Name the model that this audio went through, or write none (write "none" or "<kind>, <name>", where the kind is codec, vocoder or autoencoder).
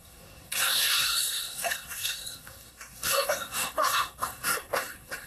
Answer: codec, SNAC